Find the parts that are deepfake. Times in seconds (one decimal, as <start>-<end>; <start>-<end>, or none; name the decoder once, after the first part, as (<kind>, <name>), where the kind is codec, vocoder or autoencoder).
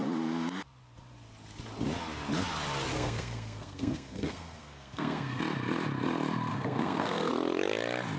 2.9-5.4 (codec, SNAC); 6.5-7.3